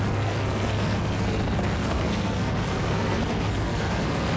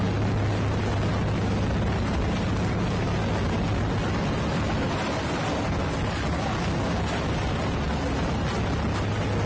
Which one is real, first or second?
second